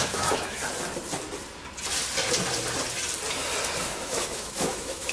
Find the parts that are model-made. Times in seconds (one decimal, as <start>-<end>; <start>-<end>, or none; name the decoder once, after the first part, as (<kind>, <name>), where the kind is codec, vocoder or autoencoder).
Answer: 0.0-0.6 (autoencoder, DAC-VAE); 3.7-5.1